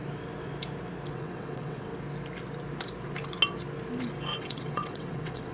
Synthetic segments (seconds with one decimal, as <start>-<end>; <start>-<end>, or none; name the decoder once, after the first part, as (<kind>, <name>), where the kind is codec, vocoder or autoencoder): 1.1-1.9 (vocoder, WaveNeXt); 4.4-5.5